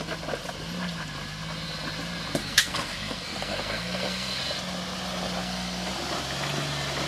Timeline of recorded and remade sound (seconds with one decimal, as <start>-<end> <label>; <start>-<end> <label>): 0.0-2.4 recorded; 2.4-4.4 remade; 4.4-5.4 recorded; 5.4-5.9 remade; 5.9-7.1 recorded